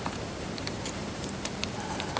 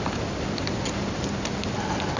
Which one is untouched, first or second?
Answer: second